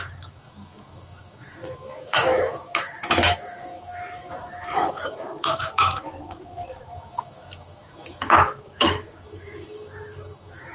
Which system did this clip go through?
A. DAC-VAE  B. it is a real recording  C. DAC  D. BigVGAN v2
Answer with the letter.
A